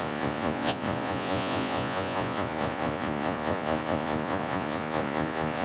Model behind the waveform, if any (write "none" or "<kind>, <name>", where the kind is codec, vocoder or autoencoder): vocoder, Vocos